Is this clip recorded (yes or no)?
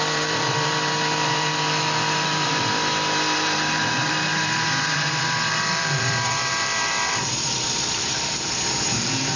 no